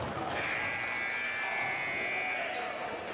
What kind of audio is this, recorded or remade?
recorded